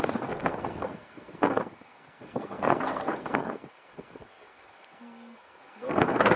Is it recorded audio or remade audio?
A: remade